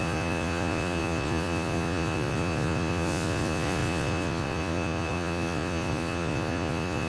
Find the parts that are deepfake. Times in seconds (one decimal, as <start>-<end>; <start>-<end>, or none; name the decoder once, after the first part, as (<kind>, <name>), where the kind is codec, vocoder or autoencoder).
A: 0.0-7.1 (vocoder, Vocos)